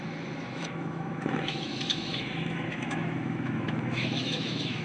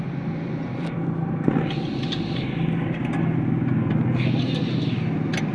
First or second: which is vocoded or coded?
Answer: first